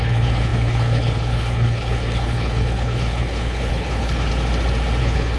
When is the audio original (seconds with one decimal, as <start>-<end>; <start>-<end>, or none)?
4.3-5.0